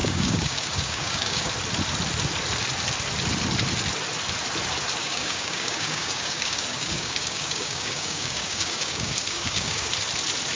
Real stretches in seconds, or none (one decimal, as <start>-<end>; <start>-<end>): 1.5-5.0; 9.9-10.6